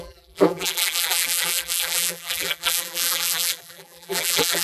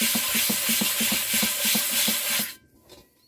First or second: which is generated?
first